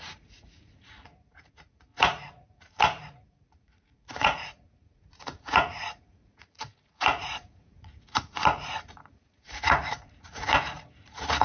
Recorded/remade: remade